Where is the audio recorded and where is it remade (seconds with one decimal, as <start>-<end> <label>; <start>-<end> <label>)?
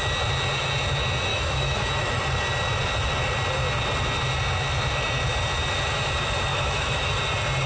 0.0-1.3 recorded; 1.3-2.2 remade; 2.2-6.5 recorded; 6.5-7.1 remade; 7.1-7.7 recorded